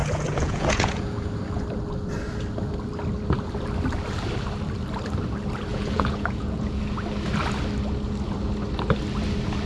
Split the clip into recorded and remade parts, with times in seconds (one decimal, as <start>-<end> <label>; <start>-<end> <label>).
0.0-1.3 remade; 1.3-5.7 recorded; 5.7-6.8 remade; 6.8-9.7 recorded